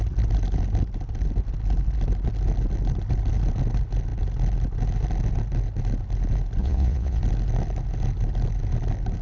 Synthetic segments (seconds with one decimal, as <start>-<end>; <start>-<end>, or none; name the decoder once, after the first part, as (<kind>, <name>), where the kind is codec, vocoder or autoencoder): 6.6-7.2 (vocoder, Vocos)